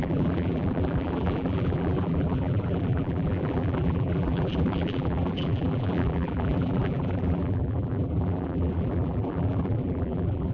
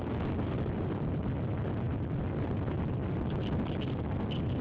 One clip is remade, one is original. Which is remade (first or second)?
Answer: first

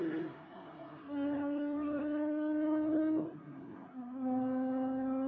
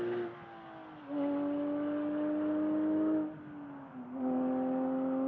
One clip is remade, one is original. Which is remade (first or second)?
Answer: first